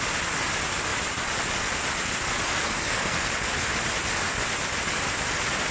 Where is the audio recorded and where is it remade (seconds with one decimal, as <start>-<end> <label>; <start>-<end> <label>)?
0.0-2.5 recorded; 2.5-3.3 remade; 3.3-5.7 recorded